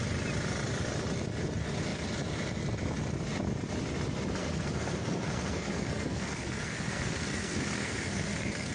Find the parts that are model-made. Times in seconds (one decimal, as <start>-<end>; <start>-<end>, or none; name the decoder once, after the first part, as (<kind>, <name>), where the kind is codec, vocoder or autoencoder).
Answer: 4.4-8.7 (codec, SNAC)